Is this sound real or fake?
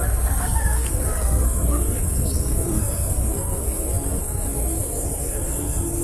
fake